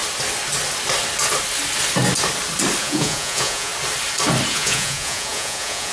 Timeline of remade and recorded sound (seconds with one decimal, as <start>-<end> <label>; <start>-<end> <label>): 0.0-2.8 recorded; 2.8-3.7 remade; 3.7-4.5 recorded; 4.5-5.9 remade

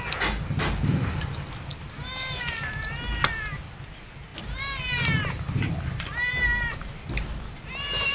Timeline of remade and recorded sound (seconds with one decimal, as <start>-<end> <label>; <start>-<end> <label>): 0.0-8.1 recorded